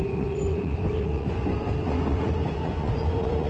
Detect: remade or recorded remade